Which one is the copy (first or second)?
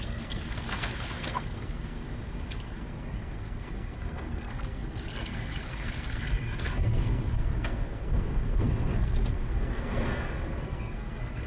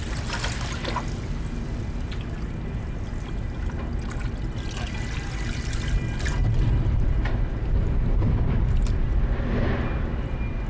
first